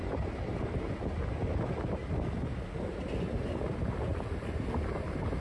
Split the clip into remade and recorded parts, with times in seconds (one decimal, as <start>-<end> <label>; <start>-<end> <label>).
0.0-1.0 remade; 1.0-4.1 recorded; 4.1-5.4 remade